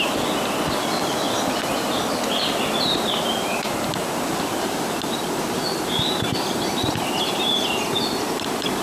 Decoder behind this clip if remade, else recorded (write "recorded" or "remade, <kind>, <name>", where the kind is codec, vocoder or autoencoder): recorded